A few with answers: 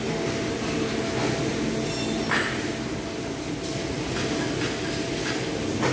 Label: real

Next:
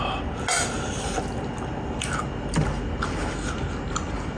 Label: real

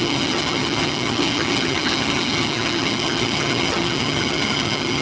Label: fake